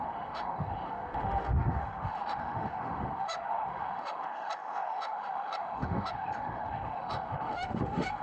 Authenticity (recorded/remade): remade